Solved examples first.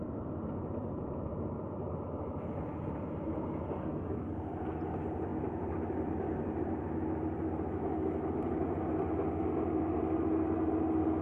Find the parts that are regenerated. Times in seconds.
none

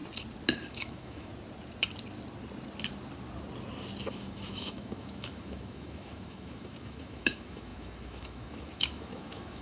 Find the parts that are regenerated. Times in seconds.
0.7-1.3 (autoencoder, DAC-VAE); 4.1-9.6